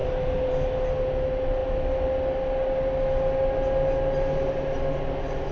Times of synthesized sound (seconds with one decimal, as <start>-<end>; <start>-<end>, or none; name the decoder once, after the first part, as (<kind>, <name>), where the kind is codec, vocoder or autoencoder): none